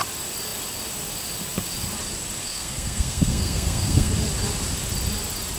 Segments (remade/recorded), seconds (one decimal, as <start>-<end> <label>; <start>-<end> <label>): 0.0-2.4 recorded; 2.4-4.1 remade; 4.1-5.6 recorded